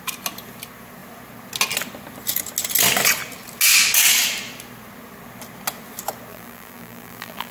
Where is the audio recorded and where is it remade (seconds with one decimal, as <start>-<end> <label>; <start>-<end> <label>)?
0.0-6.3 recorded; 6.3-7.5 remade